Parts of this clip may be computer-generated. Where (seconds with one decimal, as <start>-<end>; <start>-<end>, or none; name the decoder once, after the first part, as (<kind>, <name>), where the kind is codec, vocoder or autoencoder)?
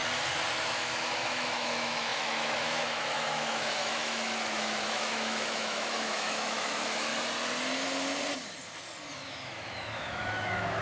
0.6-7.1 (autoencoder, DAC-VAE); 9.1-10.8